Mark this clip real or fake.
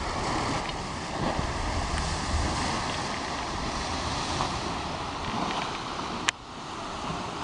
real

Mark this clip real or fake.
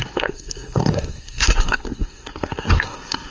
fake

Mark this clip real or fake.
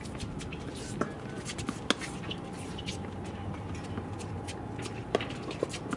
real